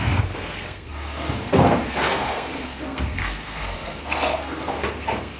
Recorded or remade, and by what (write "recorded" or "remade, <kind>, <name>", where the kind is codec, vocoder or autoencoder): remade, codec, SNAC